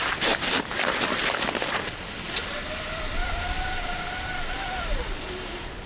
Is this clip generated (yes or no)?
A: no